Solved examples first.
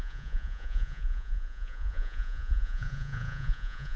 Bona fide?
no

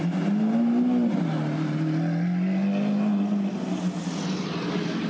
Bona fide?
yes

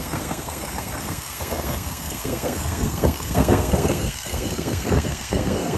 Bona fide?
no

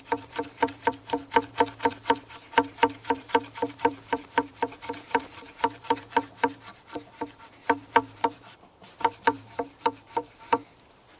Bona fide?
no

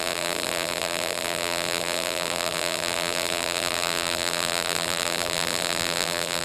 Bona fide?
no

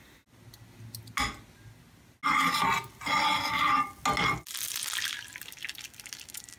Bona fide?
yes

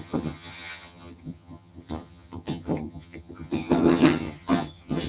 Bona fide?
no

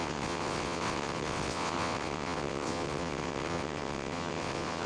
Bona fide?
no